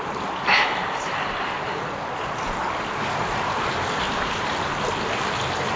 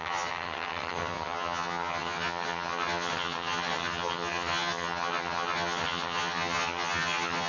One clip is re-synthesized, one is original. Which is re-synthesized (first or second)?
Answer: second